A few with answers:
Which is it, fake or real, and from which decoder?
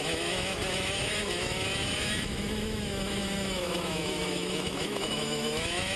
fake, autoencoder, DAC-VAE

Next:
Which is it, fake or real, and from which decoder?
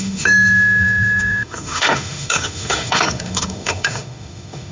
fake, autoencoder, DAC-VAE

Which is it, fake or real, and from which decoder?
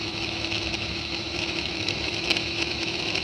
fake, autoencoder, DAC-VAE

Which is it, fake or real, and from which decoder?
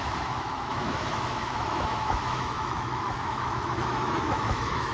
fake, autoencoder, DAC-VAE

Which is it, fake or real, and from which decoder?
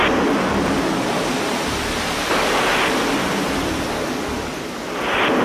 real